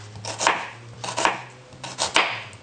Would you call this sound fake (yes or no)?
no